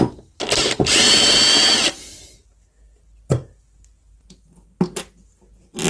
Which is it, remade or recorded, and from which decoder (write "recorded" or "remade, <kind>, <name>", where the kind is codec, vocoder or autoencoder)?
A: recorded